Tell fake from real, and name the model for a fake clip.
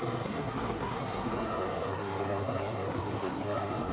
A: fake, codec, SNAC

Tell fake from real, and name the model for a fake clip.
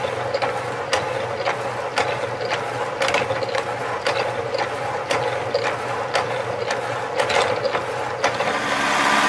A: real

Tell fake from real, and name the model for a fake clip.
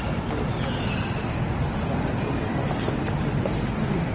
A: real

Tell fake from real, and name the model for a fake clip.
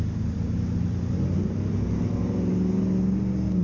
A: real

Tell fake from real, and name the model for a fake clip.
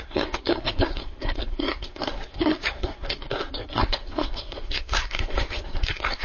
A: fake, codec, SNAC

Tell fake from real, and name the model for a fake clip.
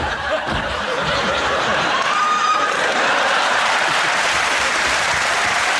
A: fake, vocoder, BigVGAN v2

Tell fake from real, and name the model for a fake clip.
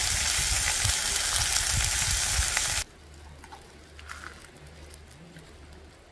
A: real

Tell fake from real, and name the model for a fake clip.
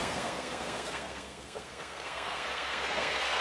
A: fake, codec, SNAC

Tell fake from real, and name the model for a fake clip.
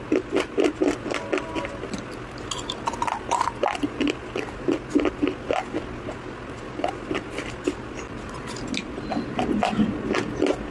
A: real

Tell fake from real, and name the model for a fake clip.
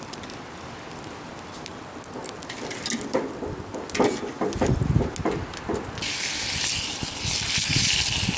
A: real